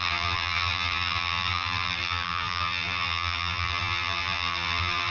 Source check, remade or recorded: remade